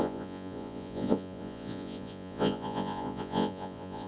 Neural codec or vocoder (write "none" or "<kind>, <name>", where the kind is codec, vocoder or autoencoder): vocoder, Vocos